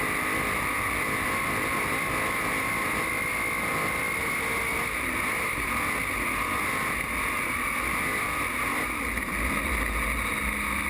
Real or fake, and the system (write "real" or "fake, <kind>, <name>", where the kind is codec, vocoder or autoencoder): real